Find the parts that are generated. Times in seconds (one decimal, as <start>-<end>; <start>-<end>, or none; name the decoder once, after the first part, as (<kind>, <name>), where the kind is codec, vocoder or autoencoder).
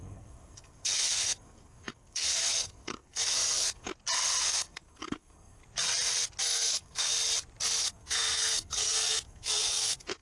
0.0-3.9 (codec, SNAC); 4.4-5.6; 6.4-7.1; 7.8-10.2